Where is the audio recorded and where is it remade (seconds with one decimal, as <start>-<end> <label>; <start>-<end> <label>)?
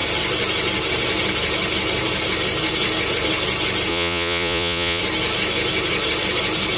0.0-3.9 recorded; 3.9-5.0 remade; 5.0-6.8 recorded